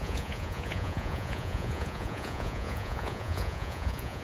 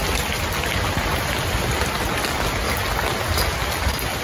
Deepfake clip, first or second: first